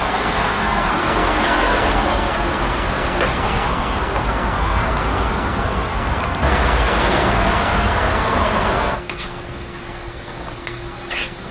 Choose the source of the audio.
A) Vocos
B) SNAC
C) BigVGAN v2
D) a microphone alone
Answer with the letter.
B